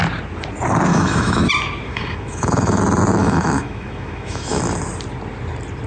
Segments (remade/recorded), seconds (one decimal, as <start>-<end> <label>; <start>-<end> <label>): 0.0-0.9 recorded; 0.9-1.5 remade; 1.5-1.9 recorded; 1.9-2.8 remade; 2.8-3.2 recorded; 3.2-4.6 remade; 4.6-5.9 recorded